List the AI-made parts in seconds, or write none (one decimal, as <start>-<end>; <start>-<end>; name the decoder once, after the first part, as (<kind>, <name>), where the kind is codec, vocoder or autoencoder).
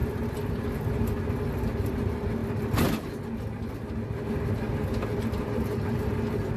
none